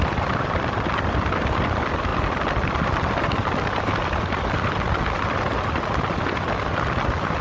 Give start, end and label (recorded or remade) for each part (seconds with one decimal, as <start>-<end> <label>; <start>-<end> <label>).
0.0-7.4 recorded